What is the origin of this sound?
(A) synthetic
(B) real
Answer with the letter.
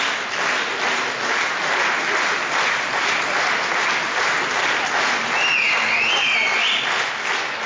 B